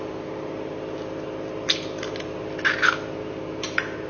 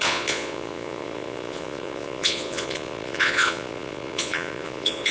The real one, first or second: first